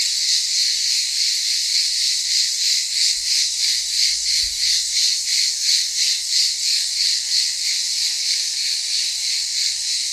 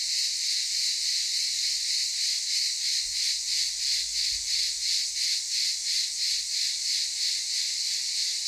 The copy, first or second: first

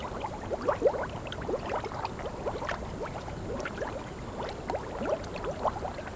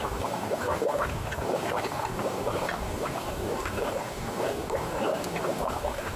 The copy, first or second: second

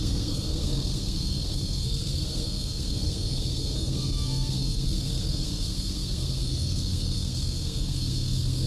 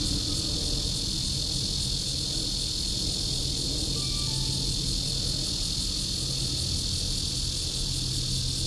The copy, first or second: first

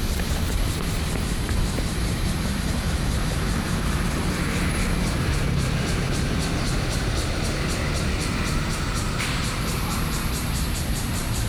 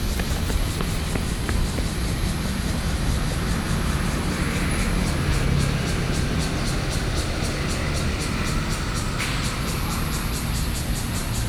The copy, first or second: first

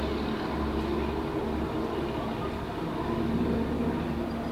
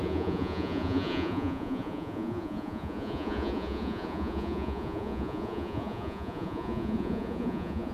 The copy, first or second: second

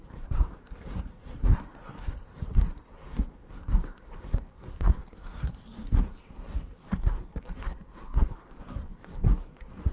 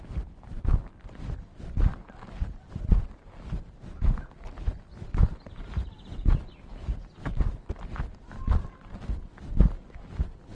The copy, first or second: first